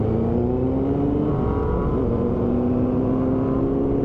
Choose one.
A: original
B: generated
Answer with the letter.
A